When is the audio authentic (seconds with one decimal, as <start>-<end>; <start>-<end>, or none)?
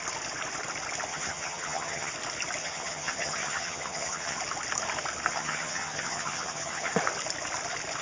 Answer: 0.0-1.1; 2.1-2.6; 4.4-5.3; 6.9-8.0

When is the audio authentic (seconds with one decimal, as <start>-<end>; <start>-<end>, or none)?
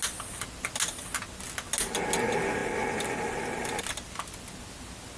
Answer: 0.0-5.2